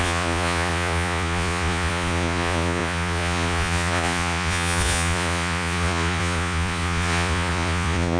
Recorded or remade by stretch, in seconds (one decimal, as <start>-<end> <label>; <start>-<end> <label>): 0.0-8.2 remade